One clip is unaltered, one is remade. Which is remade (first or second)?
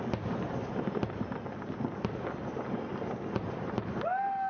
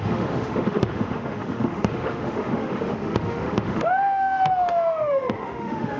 second